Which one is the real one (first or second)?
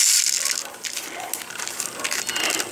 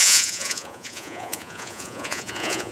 first